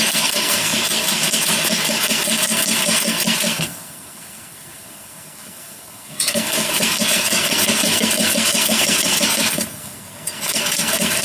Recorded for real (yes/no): no